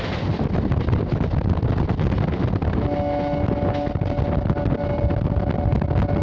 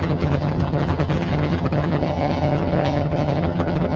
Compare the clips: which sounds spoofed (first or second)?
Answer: second